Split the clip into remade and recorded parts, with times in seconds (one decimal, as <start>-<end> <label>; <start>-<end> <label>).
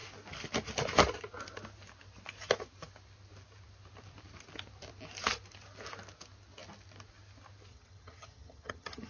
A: 0.0-7.7 recorded; 7.7-9.1 remade